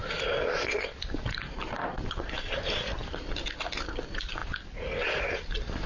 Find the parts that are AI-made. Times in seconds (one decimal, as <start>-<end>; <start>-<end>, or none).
none